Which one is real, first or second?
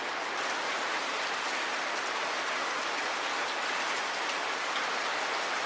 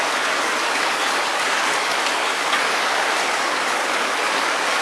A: first